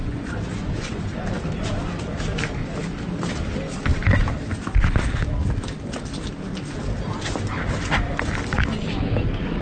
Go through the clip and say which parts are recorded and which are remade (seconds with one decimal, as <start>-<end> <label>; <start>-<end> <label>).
0.0-1.0 remade; 1.0-9.6 recorded